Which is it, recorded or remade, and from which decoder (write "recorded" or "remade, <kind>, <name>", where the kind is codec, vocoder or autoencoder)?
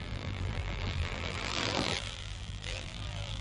remade, vocoder, BigVGAN v2